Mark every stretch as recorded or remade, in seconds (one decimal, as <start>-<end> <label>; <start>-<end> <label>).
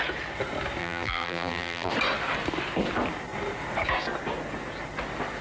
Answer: 0.0-0.8 recorded; 0.8-1.9 remade; 1.9-5.4 recorded